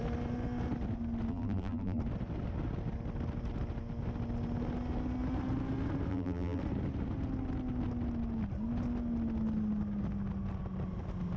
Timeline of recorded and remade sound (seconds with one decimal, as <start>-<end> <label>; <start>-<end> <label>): 0.0-1.3 recorded; 1.3-2.0 remade; 2.0-6.1 recorded; 6.1-6.6 remade; 6.6-11.4 recorded

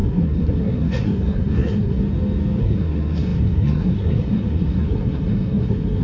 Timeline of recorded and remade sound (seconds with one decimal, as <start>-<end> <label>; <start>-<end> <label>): 0.0-2.0 remade; 2.0-2.6 recorded; 2.6-6.0 remade

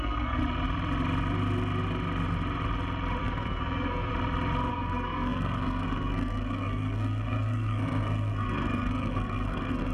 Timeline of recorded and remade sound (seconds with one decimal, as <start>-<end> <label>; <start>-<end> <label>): 0.0-0.4 remade; 0.4-3.2 recorded; 3.2-4.1 remade; 4.1-4.7 recorded; 4.7-9.9 remade

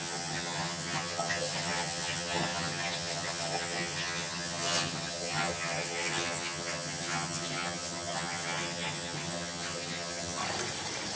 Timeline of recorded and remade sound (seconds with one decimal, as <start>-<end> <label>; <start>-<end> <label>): 0.0-10.4 remade; 10.4-11.2 recorded

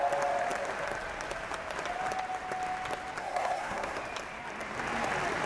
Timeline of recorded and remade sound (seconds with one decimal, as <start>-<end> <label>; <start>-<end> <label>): 0.0-3.2 recorded; 3.2-4.0 remade; 4.0-5.5 recorded

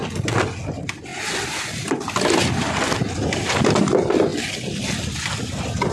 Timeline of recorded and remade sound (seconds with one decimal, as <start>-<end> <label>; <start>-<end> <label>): 0.0-5.9 recorded

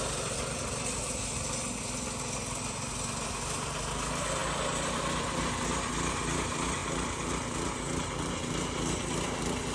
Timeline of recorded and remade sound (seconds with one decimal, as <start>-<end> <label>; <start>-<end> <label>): 0.0-9.7 recorded

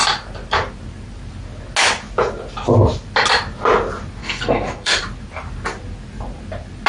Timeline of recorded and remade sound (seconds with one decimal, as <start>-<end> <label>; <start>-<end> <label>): 0.0-4.2 recorded; 4.2-5.0 remade; 5.0-6.9 recorded